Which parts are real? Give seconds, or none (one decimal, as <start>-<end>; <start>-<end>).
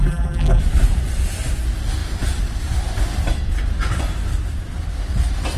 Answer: 0.6-5.6